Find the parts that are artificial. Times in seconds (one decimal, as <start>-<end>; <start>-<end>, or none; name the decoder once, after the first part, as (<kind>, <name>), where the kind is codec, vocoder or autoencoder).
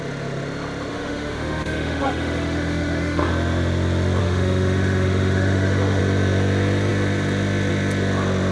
0.9-3.3 (autoencoder, DAC-VAE); 4.2-6.0